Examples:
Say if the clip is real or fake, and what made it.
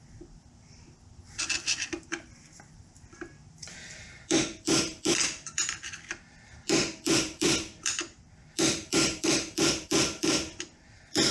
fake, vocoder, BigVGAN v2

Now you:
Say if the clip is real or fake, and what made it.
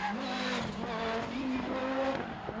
real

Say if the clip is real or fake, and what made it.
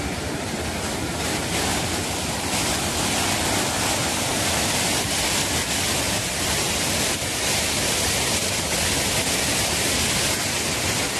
real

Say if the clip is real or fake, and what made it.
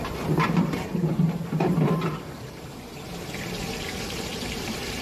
fake, vocoder, BigVGAN v2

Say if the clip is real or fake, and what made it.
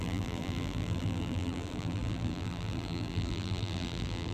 fake, vocoder, BigVGAN v2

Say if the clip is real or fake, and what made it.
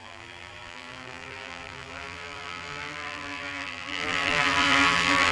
fake, vocoder, BigVGAN v2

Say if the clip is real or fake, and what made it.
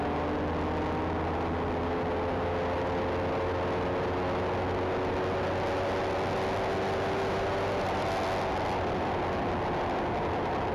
real